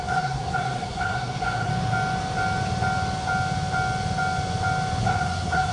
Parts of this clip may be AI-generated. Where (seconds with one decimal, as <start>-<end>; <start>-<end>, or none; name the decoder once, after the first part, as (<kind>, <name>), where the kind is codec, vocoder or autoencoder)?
0.0-1.7 (codec, SNAC); 5.0-5.7